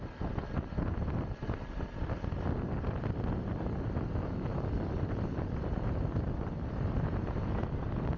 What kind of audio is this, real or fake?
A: real